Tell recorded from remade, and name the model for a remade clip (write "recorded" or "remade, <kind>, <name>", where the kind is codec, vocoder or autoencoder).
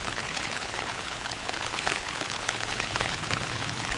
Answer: remade, codec, HILCodec